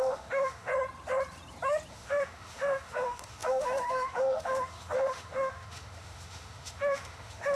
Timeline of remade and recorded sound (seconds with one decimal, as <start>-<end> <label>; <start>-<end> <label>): 0.0-0.7 remade; 0.7-1.9 recorded; 1.9-7.5 remade